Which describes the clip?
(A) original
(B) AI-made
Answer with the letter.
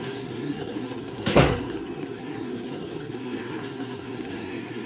B